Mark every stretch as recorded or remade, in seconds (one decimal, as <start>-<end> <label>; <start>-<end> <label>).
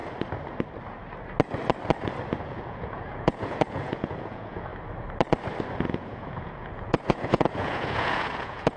0.0-2.4 recorded; 2.4-4.7 remade; 4.7-5.7 recorded; 5.7-8.8 remade